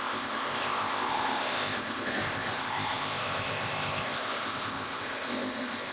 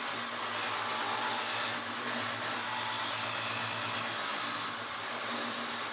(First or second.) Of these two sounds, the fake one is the first